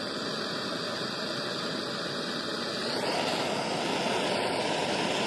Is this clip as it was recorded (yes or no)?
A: yes